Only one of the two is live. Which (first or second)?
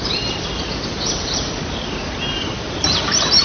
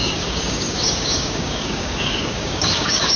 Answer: first